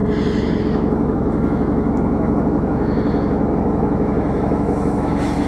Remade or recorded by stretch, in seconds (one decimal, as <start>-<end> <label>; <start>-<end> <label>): 0.0-0.6 recorded; 0.6-5.5 remade

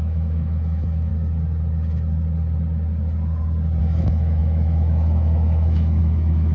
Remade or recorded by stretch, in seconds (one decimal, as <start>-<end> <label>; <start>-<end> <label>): 0.0-1.1 remade; 1.1-3.8 recorded; 3.8-6.5 remade

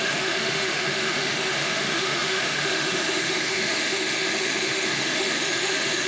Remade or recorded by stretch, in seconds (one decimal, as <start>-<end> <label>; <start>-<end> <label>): 0.0-6.1 remade

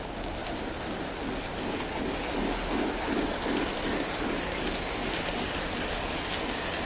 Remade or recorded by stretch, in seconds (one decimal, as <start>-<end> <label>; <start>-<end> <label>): 0.0-6.9 recorded

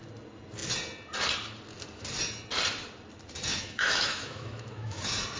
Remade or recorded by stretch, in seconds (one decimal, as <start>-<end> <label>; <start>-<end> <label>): 0.0-3.5 recorded; 3.5-5.0 remade; 5.0-5.4 recorded